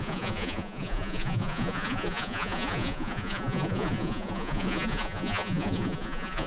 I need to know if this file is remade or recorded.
remade